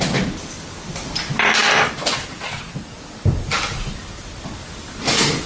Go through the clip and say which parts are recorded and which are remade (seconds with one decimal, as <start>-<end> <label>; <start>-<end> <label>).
0.0-5.5 recorded